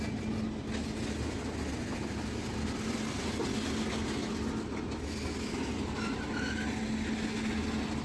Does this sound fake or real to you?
real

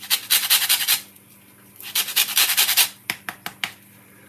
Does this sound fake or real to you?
real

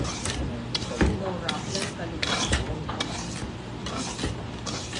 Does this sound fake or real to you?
real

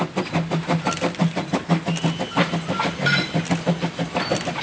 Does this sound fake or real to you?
real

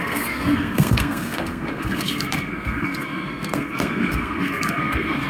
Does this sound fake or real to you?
fake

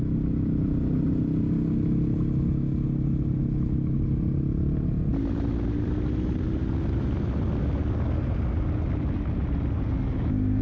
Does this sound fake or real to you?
real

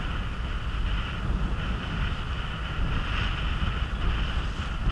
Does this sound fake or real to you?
real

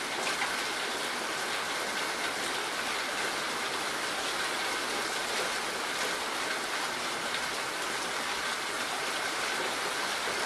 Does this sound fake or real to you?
real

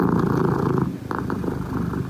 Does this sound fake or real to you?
real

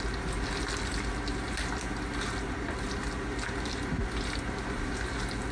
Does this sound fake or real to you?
real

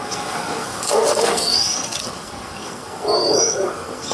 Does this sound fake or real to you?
fake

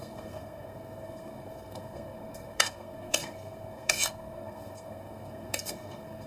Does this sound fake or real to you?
fake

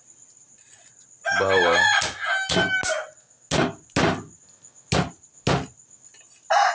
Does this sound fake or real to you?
real